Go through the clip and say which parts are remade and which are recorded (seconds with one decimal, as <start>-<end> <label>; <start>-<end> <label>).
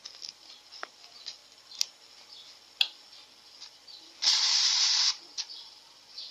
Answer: 0.0-1.4 remade; 1.4-3.5 recorded; 3.5-6.3 remade